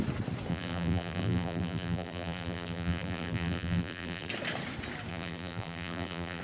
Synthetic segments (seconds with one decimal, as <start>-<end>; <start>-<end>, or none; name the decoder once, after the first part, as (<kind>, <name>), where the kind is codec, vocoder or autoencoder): 0.5-4.3 (vocoder, BigVGAN v2); 5.1-6.4